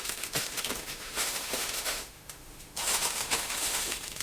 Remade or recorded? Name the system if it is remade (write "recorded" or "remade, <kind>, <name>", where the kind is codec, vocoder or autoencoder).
remade, autoencoder, DAC-VAE